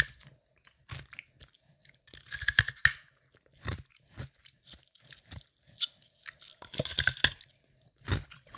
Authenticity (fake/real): real